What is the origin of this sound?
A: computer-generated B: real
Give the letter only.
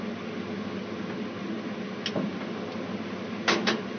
B